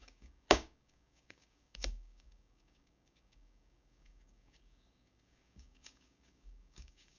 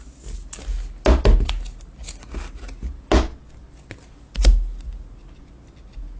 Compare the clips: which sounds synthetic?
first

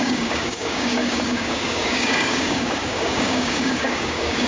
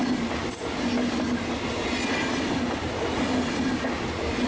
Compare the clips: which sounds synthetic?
first